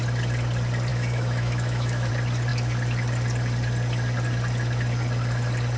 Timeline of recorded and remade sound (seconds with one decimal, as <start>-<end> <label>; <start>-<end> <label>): 0.0-0.9 recorded; 0.9-2.1 remade; 2.1-5.8 recorded